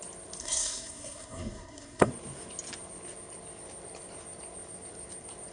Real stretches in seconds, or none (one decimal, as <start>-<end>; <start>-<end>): 0.0-0.4; 2.1-5.5